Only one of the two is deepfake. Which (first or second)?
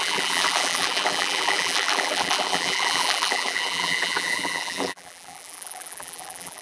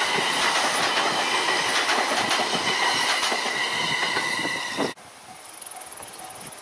first